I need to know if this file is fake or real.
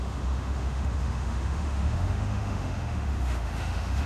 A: fake